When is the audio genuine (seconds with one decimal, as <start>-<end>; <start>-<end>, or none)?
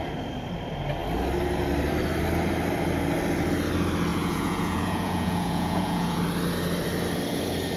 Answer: 0.0-4.1; 6.2-7.8